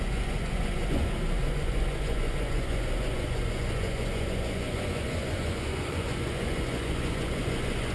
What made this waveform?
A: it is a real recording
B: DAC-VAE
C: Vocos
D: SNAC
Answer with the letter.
C